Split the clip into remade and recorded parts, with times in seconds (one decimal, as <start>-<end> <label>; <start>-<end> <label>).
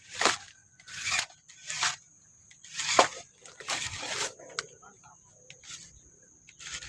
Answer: 0.0-0.6 recorded; 0.6-1.3 remade; 1.3-6.9 recorded